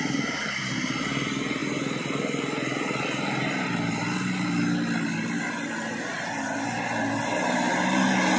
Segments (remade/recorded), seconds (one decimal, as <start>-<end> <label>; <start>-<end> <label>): 0.0-8.4 recorded